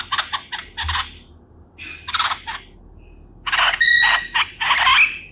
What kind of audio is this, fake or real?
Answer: real